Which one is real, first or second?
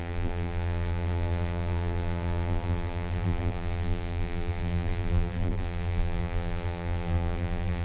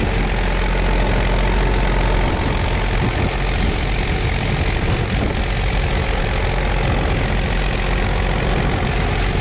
second